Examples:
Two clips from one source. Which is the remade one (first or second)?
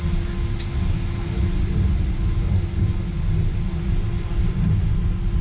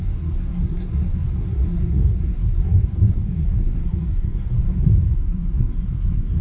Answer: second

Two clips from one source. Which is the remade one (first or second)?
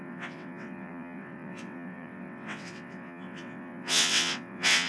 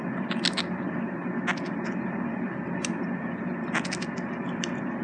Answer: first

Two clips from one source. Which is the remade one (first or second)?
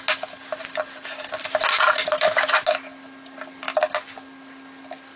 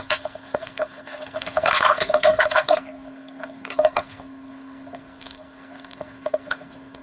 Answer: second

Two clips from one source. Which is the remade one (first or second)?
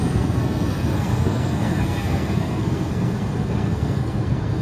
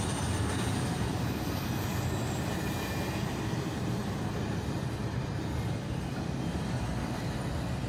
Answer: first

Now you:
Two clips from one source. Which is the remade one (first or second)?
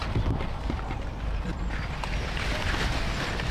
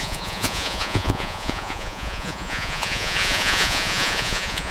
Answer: second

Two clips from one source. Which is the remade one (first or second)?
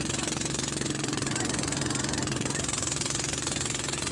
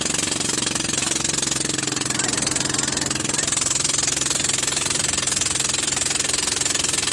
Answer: first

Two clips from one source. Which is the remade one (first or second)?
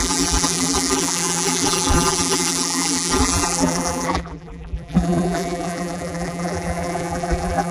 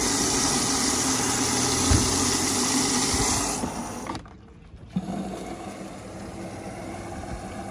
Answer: first